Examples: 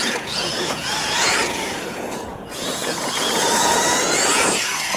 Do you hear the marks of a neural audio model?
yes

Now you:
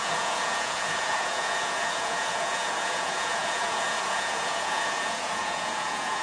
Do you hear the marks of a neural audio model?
yes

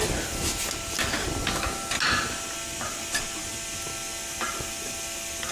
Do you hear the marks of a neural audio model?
no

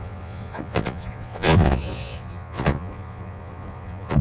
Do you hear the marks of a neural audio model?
yes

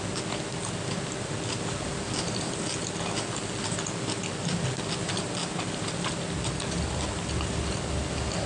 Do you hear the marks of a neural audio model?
no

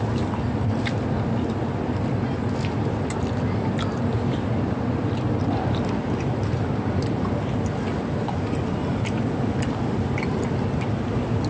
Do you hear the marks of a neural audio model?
no